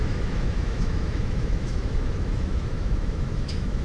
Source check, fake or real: fake